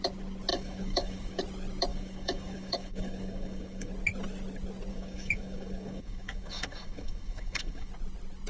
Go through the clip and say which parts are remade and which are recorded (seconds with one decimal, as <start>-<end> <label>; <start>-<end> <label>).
0.0-0.5 recorded; 0.5-1.4 remade; 1.4-1.9 recorded; 1.9-3.9 remade; 3.9-4.9 recorded; 4.9-7.9 remade; 7.9-8.5 recorded